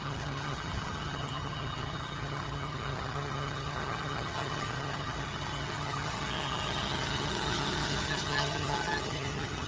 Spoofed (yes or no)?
yes